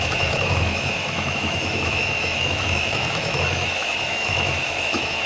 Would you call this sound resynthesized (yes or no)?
yes